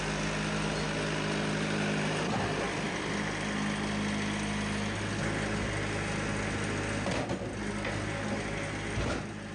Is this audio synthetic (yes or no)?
no